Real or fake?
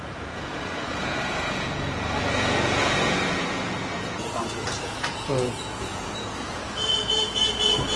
fake